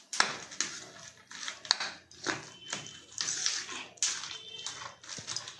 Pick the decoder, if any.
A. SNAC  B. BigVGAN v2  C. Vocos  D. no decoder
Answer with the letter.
D